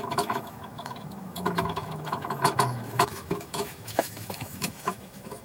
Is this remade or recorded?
remade